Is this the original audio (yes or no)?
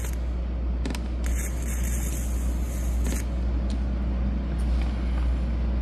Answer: yes